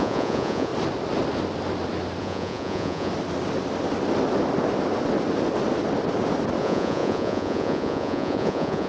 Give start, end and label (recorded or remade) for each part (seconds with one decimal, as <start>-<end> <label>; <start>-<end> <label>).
0.0-0.7 remade; 0.7-2.2 recorded; 2.2-3.1 remade; 3.1-6.6 recorded; 6.6-8.9 remade